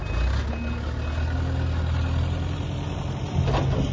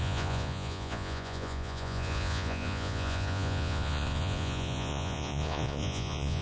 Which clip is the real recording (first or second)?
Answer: first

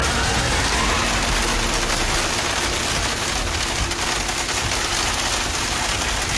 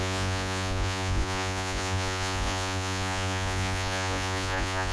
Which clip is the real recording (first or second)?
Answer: first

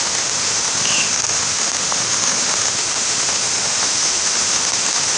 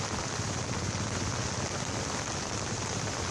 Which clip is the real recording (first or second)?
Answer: second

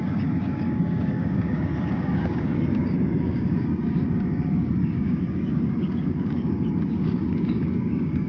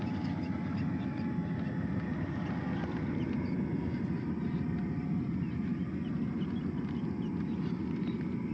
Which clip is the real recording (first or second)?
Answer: second